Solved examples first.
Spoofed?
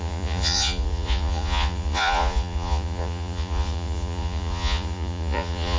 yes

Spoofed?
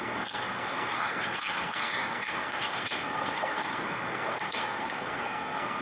yes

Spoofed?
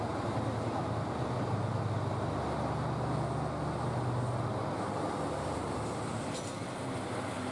no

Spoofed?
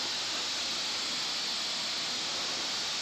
no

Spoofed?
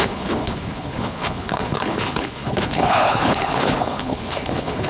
yes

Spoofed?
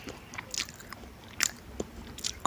no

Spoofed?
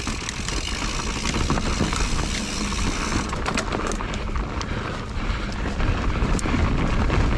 no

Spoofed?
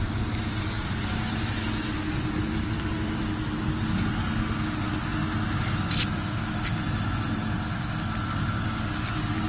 no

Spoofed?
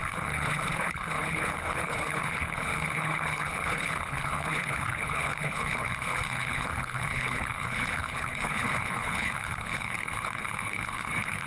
yes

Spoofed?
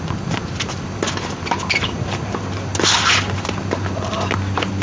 no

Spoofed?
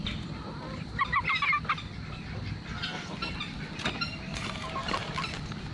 no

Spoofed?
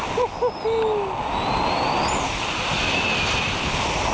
no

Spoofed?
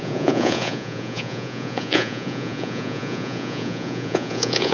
yes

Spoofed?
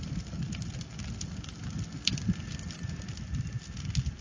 no